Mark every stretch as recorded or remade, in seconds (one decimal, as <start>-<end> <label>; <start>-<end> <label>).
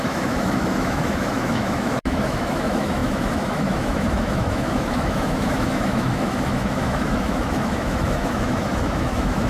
0.0-9.5 remade